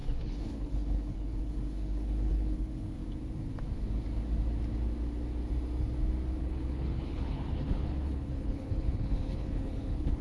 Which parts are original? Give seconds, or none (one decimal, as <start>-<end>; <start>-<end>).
3.0-6.4